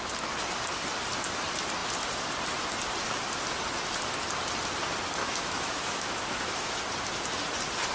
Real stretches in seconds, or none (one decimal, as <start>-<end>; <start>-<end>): 0.0-5.2; 6.8-7.9